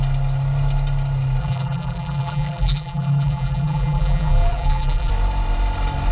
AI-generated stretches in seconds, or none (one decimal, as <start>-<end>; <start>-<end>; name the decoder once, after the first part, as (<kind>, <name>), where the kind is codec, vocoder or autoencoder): 1.4-5.1 (vocoder, BigVGAN v2)